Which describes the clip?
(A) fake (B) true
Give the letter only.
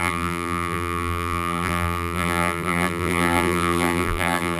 A